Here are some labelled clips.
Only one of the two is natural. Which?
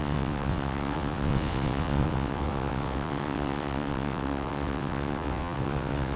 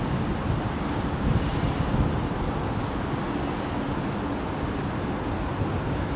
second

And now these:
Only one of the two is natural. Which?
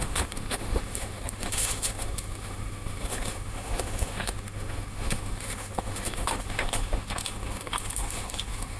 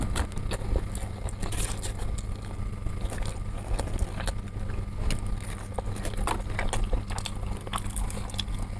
second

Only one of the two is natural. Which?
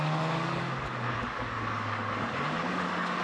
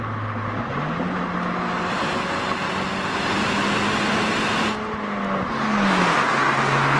second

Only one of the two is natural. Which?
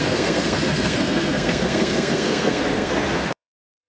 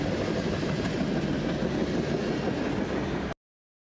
second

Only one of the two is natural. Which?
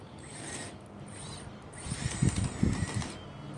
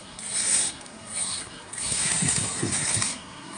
first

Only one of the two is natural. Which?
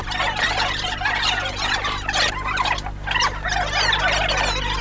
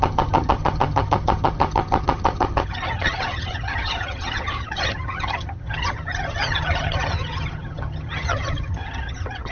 first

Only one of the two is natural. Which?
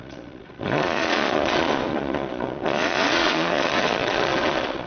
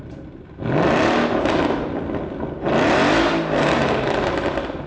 second